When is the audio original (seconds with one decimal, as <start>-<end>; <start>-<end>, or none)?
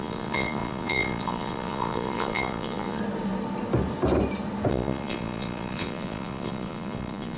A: 3.0-4.7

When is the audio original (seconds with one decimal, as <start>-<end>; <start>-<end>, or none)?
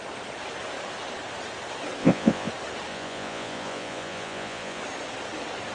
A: 0.0-2.0; 2.5-2.9; 4.8-5.7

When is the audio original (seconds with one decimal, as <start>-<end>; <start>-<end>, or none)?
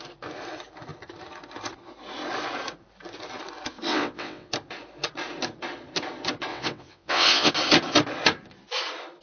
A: 0.0-3.9; 4.5-6.5; 7.5-9.2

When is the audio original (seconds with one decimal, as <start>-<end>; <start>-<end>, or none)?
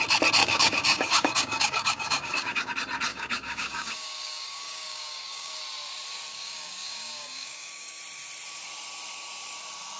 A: 0.0-0.4; 2.7-3.1; 5.6-6.3; 8.0-10.0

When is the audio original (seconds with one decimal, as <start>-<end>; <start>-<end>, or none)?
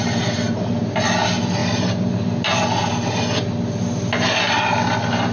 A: 0.0-1.6; 2.1-5.3